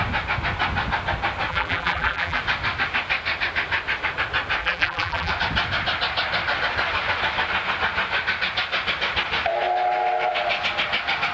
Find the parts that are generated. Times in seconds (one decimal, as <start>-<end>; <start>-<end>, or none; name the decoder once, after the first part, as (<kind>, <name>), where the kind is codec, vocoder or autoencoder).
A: 1.5-2.4 (vocoder, BigVGAN v2); 4.6-5.3